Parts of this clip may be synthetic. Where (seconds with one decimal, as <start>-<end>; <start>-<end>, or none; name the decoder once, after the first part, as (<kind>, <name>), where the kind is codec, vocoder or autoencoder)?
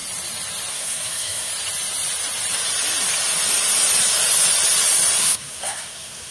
0.7-1.5 (codec, SNAC); 5.2-6.3